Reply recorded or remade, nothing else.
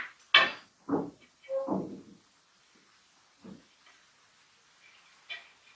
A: recorded